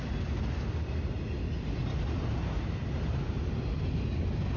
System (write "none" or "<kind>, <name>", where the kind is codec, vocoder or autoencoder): none